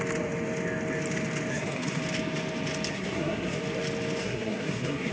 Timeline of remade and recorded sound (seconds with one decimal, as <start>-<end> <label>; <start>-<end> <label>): 0.0-1.5 recorded; 1.5-2.0 remade; 2.0-2.9 recorded; 2.9-3.6 remade; 3.6-4.2 recorded; 4.2-5.1 remade